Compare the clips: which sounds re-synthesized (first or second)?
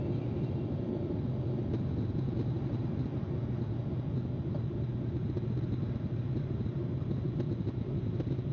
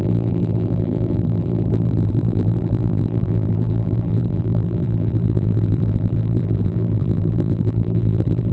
second